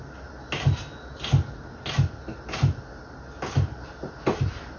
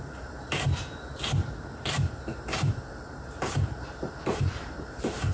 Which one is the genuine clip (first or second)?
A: first